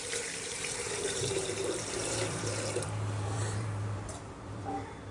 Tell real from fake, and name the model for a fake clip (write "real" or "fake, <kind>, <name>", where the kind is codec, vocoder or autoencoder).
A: fake, vocoder, BigVGAN v2